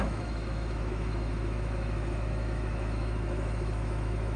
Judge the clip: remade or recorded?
remade